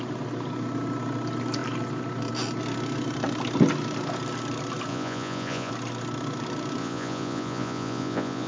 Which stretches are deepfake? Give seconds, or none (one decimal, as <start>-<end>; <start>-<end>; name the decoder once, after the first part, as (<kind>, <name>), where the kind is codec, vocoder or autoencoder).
4.9-5.7 (vocoder, Vocos); 6.8-8.5